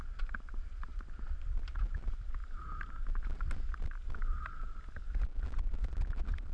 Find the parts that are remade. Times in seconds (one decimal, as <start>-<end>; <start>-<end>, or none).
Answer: 0.0-2.4; 4.9-6.5